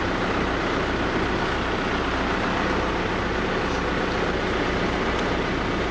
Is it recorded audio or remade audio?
recorded